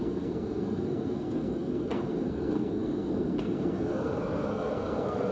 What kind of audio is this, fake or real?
fake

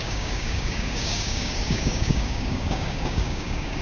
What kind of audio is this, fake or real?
fake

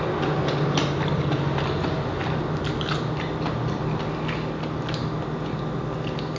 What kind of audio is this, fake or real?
real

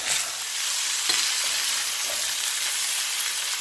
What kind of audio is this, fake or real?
real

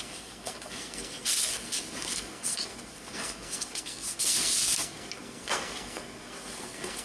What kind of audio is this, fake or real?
fake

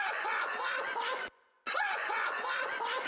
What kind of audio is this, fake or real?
fake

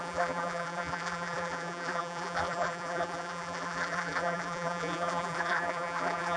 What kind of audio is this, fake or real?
fake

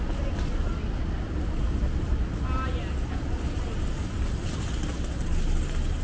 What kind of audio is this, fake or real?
real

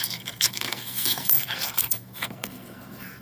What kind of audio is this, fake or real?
fake